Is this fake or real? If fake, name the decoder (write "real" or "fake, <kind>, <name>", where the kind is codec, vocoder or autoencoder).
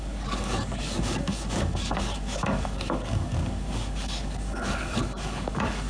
fake, codec, DAC